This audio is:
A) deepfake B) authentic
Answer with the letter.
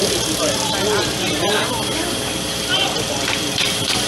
A